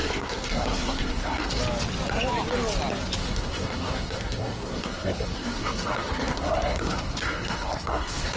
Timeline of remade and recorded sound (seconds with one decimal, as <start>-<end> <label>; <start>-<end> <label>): 0.0-1.6 remade; 1.6-3.2 recorded; 3.2-8.4 remade